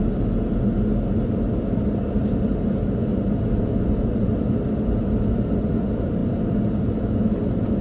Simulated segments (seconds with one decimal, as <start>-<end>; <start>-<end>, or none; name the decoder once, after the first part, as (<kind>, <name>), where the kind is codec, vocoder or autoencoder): none